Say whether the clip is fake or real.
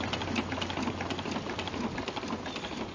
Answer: real